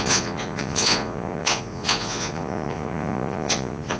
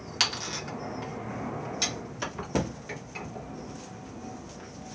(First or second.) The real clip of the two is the second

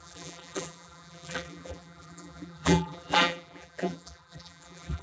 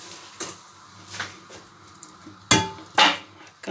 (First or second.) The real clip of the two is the second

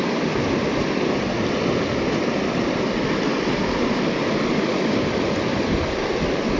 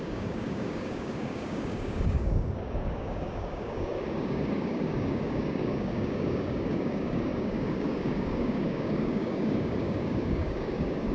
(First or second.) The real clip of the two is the first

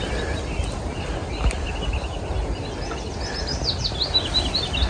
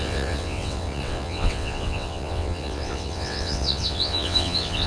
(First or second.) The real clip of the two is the first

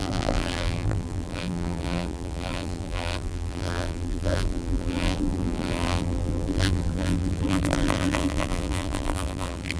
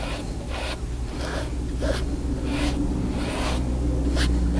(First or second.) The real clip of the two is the second